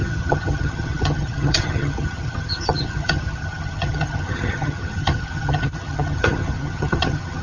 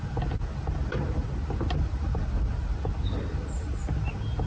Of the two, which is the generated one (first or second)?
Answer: first